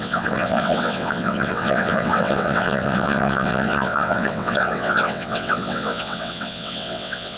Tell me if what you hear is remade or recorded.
remade